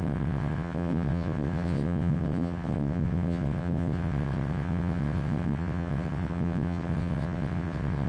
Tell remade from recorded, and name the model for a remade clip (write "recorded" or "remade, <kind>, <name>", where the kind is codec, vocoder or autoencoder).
remade, vocoder, WaveNeXt